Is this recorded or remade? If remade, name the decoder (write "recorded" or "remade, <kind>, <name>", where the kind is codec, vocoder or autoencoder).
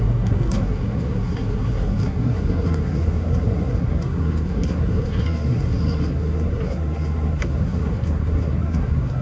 remade, codec, SNAC